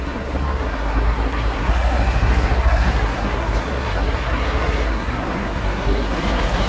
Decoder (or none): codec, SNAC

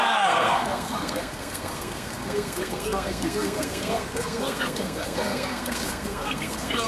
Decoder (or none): codec, SNAC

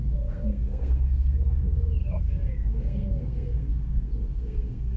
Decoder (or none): codec, SNAC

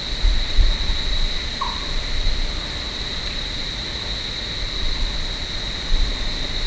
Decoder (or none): none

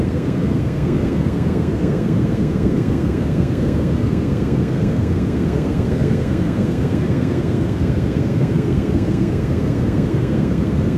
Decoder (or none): codec, SNAC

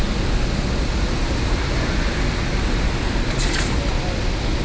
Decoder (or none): none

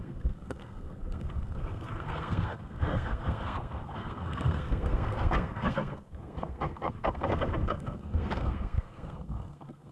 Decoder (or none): codec, SNAC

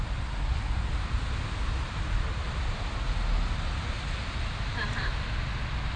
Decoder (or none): none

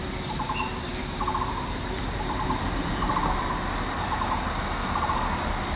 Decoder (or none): none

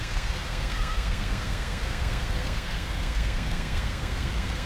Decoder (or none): codec, SNAC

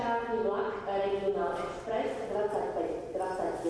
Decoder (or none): none